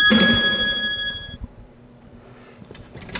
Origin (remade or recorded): remade